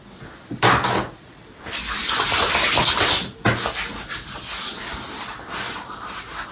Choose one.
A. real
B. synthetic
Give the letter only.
A